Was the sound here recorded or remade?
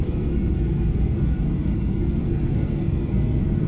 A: remade